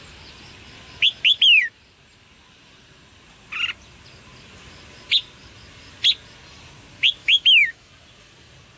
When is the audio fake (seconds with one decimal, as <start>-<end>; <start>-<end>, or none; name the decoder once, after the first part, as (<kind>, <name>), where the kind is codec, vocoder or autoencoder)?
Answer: 7.2-7.9 (autoencoder, DAC-VAE)